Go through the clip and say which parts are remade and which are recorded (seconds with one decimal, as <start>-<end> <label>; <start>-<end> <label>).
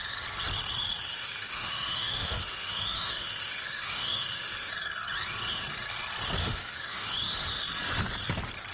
0.0-1.1 recorded; 1.1-4.7 remade; 4.7-6.4 recorded; 6.4-7.1 remade; 7.1-8.7 recorded